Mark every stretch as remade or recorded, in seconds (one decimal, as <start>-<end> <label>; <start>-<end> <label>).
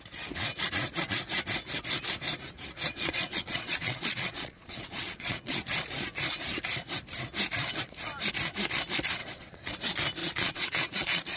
0.0-2.9 recorded; 2.9-5.6 remade; 5.6-9.2 recorded; 9.2-9.7 remade; 9.7-10.2 recorded; 10.2-11.4 remade